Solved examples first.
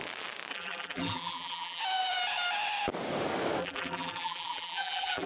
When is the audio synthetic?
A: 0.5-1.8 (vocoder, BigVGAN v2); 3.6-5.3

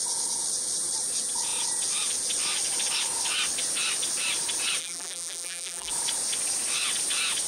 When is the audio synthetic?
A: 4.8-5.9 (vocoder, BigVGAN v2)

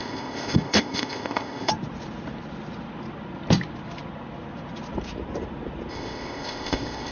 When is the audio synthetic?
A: 0.0-1.7 (codec, ZipCodec); 5.9-7.1

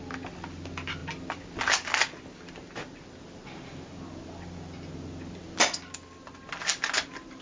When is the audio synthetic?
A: none